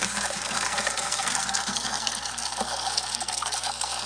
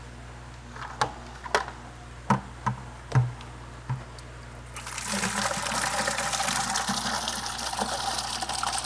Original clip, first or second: second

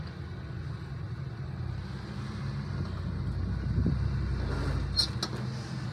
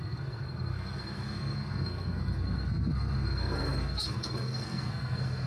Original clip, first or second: first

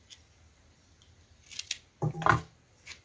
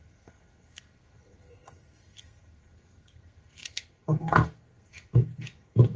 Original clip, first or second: first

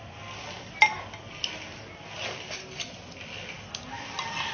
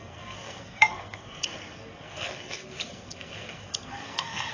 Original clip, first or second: first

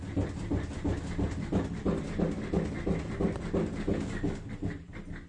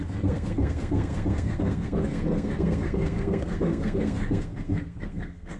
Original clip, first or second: first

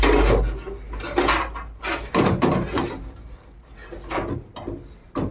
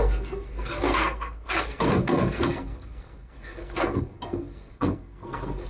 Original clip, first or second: first